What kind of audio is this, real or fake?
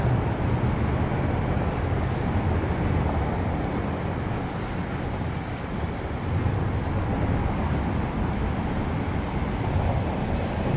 real